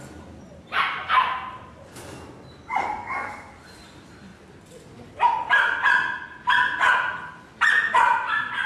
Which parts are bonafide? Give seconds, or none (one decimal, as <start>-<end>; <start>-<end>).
0.0-2.8; 3.5-8.7